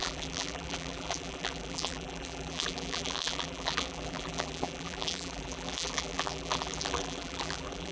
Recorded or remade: remade